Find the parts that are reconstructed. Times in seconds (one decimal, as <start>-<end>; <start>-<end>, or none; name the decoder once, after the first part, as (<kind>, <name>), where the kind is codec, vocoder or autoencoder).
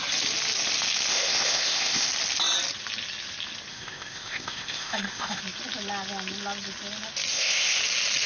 1.1-2.1 (codec, ZipCodec); 3.7-5.4; 7.3-7.8